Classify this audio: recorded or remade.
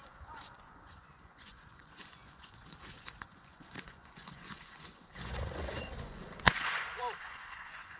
remade